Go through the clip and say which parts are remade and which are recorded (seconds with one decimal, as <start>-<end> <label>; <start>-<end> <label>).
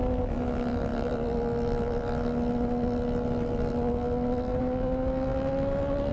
0.0-6.1 recorded